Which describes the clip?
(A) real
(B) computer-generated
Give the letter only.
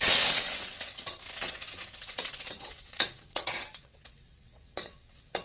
B